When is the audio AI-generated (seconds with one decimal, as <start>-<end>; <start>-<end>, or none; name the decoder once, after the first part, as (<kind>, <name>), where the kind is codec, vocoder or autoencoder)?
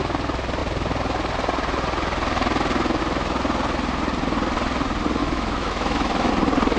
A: 5.2-6.3 (autoencoder, DAC-VAE)